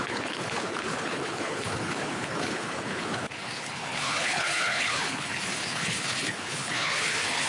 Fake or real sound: fake